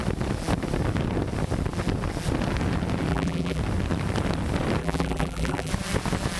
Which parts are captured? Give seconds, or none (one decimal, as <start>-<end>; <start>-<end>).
0.0-3.1; 3.6-4.8; 5.7-6.4